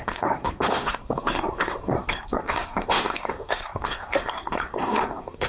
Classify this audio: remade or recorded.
remade